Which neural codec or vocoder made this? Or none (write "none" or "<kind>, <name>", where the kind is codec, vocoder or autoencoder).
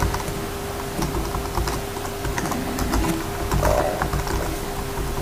none